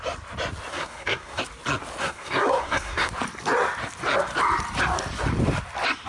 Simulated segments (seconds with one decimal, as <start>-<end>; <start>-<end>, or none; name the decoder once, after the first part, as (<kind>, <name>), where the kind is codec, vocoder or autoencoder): 0.7-1.4 (codec, SNAC); 2.0-3.1